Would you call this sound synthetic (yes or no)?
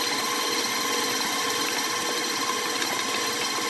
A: no